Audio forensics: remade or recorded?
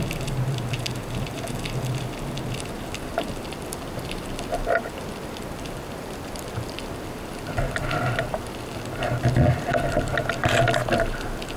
recorded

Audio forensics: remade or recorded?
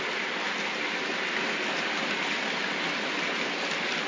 recorded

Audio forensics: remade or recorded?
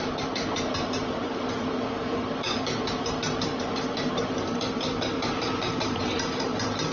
remade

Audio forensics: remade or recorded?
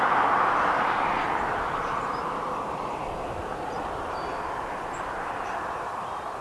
remade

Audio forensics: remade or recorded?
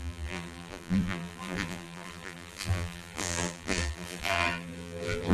remade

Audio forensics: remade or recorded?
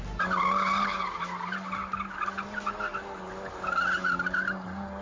recorded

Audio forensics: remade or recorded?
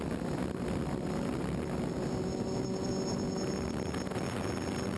recorded